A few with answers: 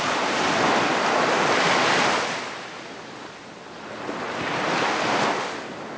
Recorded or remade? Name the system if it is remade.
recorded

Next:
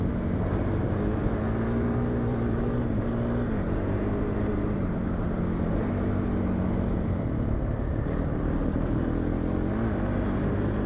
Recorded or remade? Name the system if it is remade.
recorded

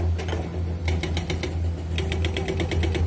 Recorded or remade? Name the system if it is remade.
recorded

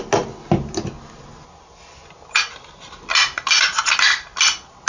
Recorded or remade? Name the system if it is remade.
recorded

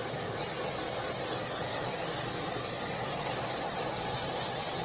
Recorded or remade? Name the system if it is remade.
recorded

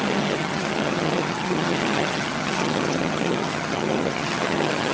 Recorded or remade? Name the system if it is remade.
remade, vocoder, HiFi-GAN